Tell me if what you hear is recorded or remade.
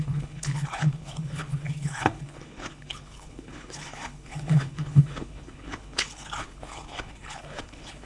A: remade